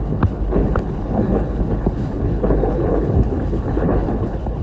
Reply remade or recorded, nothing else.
remade